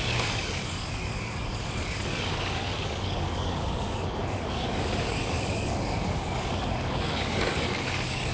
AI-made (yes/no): yes